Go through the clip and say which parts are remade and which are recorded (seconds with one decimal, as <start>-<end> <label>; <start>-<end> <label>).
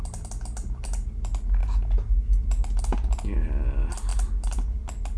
0.0-5.2 recorded